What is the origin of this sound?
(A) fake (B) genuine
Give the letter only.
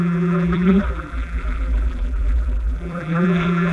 A